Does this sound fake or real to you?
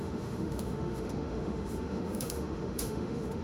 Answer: fake